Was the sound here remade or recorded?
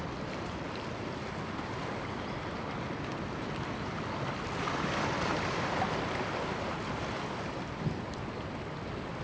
recorded